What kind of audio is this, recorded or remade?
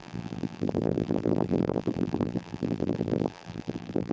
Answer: remade